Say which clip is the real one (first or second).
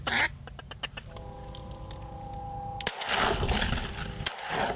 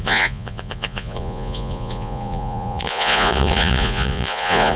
first